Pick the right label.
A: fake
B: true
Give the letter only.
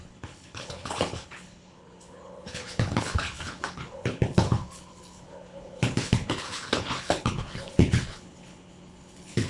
A